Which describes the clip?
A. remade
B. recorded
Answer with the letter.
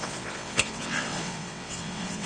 A